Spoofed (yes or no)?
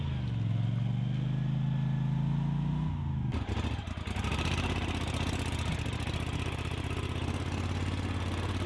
no